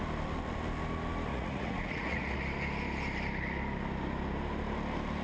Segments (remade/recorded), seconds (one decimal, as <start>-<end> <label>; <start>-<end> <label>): 0.0-1.3 recorded; 1.3-2.4 remade; 2.4-5.2 recorded